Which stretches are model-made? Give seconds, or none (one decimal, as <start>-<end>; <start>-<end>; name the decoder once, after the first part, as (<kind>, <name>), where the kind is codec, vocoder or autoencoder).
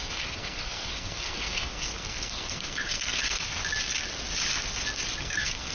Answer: 0.0-3.6 (codec, SNAC); 5.2-5.7